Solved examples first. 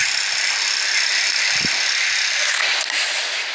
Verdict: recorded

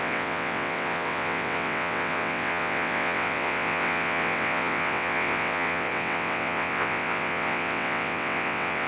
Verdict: remade